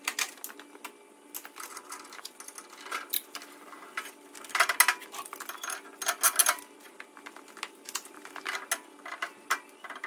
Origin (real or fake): real